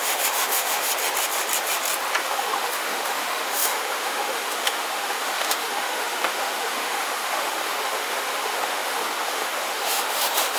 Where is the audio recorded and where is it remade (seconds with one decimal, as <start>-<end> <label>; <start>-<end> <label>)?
0.0-0.9 remade; 0.9-2.2 recorded; 2.2-10.6 remade